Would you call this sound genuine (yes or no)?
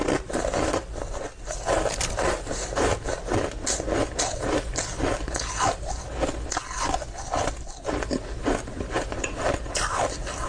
yes